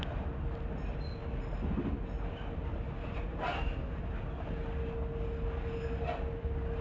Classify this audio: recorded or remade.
recorded